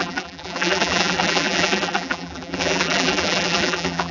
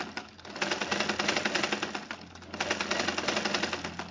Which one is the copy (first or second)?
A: first